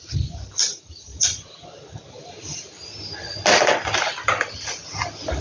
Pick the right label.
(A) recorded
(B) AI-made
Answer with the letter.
A